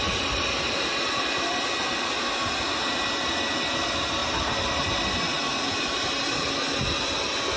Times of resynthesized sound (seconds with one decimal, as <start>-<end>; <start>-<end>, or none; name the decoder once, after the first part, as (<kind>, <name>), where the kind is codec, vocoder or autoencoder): 4.2-5.1 (vocoder, BigVGAN v2); 5.5-6.5